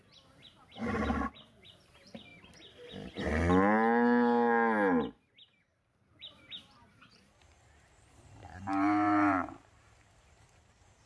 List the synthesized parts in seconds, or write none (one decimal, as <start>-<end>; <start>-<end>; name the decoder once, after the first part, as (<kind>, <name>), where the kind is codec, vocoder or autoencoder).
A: 0.0-2.3 (vocoder, BigVGAN v2); 5.6-11.1

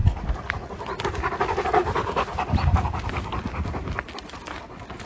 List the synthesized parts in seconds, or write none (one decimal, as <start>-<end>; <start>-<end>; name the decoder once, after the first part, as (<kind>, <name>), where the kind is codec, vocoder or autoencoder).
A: none

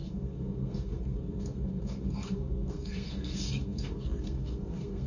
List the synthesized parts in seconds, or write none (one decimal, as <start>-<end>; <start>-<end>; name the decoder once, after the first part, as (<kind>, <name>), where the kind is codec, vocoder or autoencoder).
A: 0.0-5.1 (codec, SNAC)

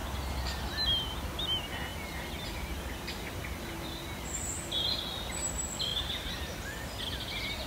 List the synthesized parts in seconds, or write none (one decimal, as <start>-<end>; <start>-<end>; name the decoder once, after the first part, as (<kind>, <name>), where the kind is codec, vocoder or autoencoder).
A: 0.0-0.6 (vocoder, BigVGAN v2); 5.9-7.0

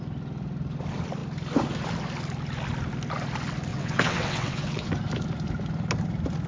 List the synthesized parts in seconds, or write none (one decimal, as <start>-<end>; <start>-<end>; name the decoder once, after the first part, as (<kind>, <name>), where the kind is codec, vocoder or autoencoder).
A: 3.7-4.9 (vocoder, WaveNeXt)

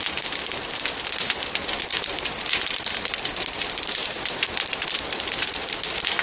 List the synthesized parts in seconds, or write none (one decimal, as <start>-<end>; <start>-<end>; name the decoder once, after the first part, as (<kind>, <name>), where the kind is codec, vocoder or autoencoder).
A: 1.9-4.9 (vocoder, BigVGAN v2)

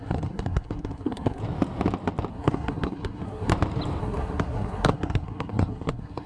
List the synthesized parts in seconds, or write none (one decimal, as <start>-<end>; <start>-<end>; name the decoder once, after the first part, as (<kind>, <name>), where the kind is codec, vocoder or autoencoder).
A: 0.0-1.4 (codec, SNAC); 2.3-3.5; 4.0-6.3